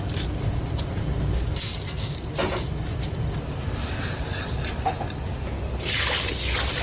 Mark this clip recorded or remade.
recorded